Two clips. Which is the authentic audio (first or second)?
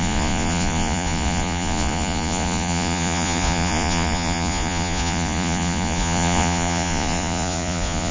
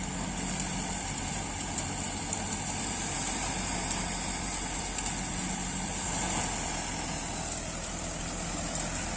second